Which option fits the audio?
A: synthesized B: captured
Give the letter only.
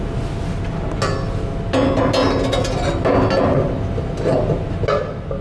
B